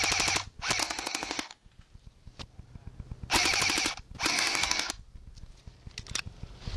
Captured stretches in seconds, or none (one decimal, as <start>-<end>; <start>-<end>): 0.0-0.8; 1.7-4.3; 4.9-6.8